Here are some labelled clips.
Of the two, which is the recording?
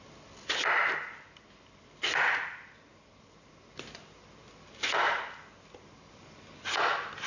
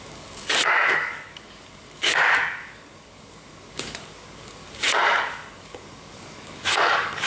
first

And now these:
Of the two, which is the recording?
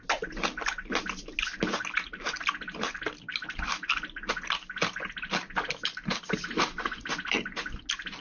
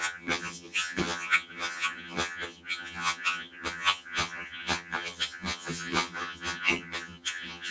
first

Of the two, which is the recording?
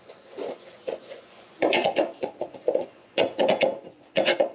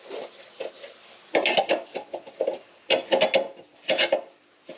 second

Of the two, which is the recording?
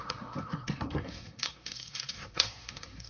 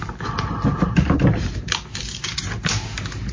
second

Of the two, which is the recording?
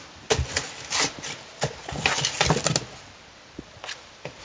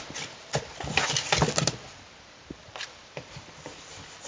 first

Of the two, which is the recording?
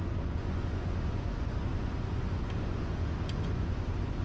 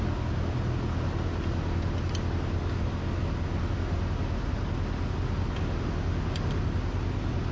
second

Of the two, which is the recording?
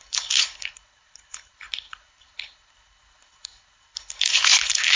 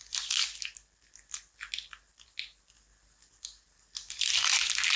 second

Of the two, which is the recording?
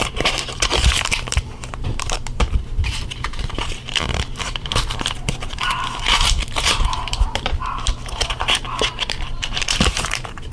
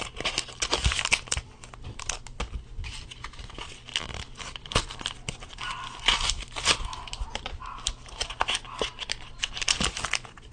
second